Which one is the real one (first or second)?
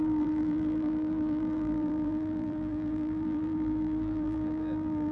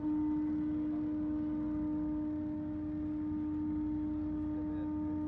second